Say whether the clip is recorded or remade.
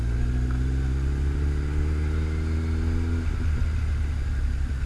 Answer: recorded